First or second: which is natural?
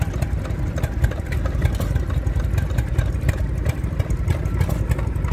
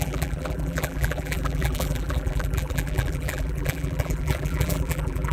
first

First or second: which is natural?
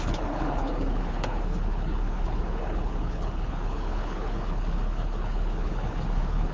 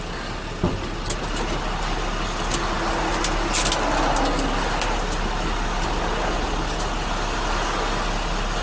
second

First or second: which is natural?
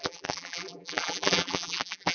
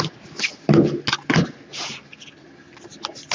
second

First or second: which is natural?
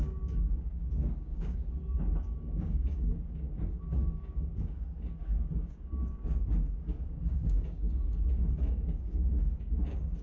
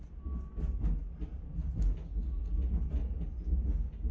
second